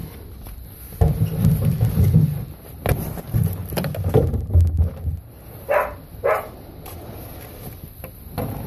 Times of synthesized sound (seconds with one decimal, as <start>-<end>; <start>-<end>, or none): 0.0-3.2